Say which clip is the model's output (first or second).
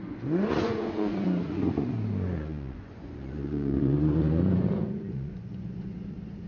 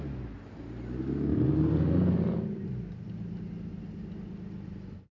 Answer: first